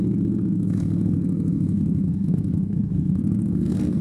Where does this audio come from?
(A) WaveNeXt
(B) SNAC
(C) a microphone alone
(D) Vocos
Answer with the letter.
B